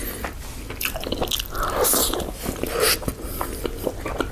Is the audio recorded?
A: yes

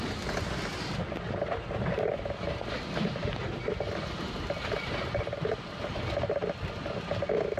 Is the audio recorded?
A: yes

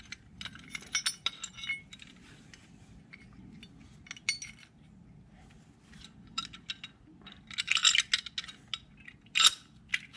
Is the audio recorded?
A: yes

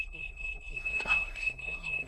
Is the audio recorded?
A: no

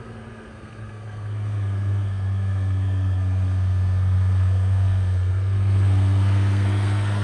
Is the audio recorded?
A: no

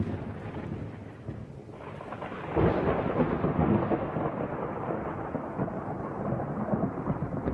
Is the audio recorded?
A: yes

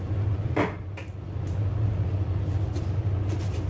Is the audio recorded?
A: yes